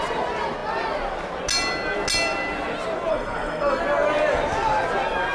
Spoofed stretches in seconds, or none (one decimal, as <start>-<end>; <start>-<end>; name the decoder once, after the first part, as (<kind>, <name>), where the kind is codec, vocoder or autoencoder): 3.1-3.8 (codec, SNAC)